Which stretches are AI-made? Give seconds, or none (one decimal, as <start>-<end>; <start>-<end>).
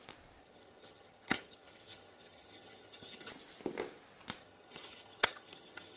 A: 0.4-3.3; 4.4-6.0